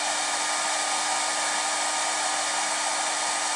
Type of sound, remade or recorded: recorded